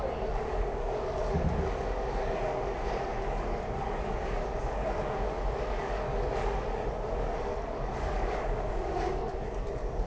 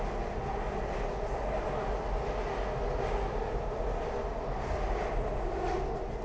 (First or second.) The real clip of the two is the second